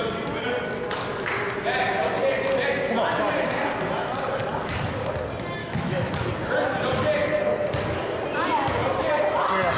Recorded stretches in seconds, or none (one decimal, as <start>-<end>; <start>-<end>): 0.0-5.6; 6.1-9.8